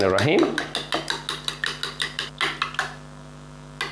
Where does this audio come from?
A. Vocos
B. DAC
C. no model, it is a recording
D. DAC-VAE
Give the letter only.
C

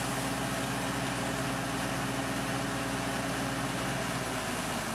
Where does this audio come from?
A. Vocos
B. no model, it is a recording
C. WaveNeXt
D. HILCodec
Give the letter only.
B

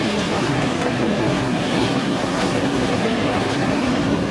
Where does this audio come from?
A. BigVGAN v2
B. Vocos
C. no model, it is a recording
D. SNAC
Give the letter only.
D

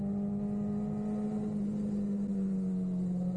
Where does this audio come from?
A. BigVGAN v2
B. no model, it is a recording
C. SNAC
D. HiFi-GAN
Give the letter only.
B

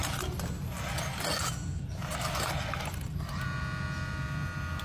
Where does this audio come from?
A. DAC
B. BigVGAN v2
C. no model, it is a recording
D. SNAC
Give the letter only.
C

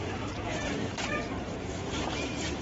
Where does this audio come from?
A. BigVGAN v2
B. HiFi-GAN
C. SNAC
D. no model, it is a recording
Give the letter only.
A